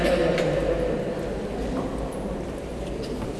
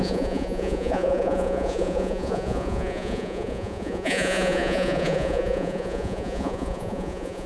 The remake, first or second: second